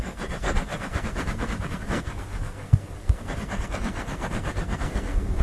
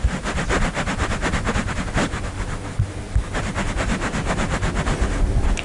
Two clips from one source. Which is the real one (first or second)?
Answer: second